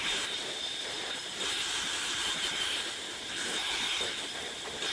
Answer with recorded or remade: remade